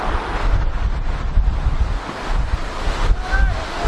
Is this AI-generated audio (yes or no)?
no